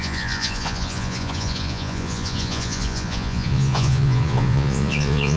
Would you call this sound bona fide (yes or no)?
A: no